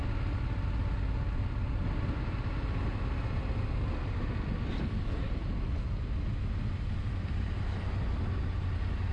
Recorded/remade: recorded